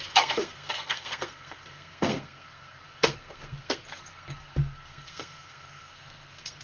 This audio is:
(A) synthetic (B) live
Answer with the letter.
A